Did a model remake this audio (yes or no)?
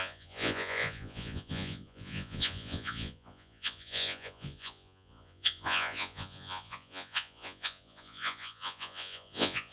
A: yes